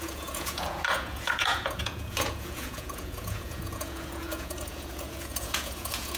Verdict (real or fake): fake